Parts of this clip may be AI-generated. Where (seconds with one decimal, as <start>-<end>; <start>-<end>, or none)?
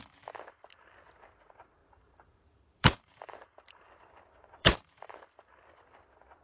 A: 1.8-5.5